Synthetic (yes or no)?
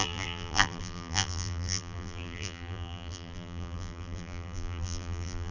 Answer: yes